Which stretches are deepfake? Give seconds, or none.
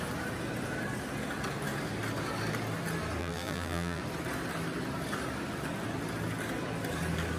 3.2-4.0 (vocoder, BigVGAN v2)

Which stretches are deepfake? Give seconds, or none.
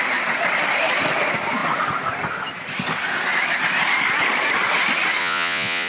5.2-5.9 (vocoder, Vocos)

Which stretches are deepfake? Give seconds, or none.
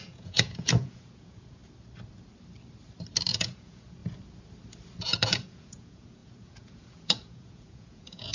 0.0-1.6 (vocoder, Vocos); 3.3-4.0; 5.0-8.3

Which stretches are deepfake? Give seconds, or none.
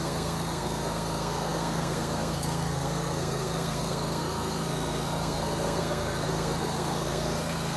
0.0-7.8 (codec, SNAC)